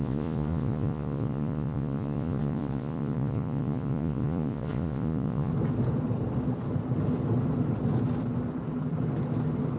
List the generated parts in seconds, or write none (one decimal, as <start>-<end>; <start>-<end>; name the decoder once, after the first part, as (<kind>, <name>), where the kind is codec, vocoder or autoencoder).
0.0-5.5 (vocoder, Vocos)